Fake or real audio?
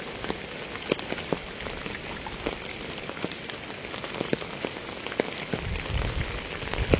real